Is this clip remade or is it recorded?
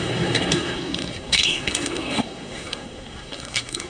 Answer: remade